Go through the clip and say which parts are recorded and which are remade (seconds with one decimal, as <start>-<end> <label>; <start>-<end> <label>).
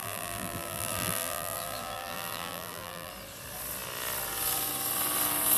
0.0-3.1 remade; 3.1-5.6 recorded